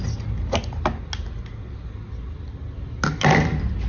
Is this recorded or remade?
recorded